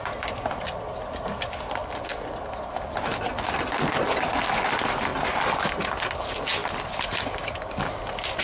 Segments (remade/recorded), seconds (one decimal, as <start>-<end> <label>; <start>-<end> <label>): 0.0-8.4 recorded